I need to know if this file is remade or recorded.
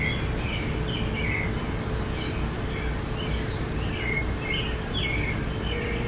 recorded